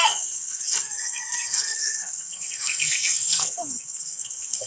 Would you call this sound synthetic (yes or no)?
yes